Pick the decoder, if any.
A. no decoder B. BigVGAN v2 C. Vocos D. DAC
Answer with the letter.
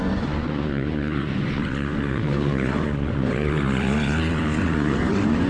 C